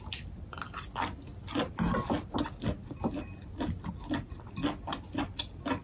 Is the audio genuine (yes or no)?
yes